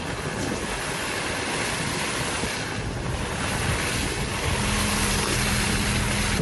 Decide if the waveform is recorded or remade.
recorded